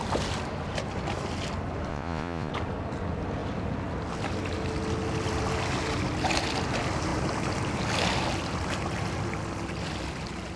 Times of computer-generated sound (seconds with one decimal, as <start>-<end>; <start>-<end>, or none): 1.9-2.5